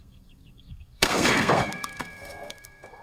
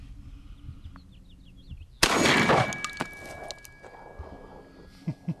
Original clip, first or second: second